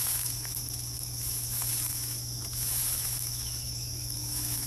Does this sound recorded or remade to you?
remade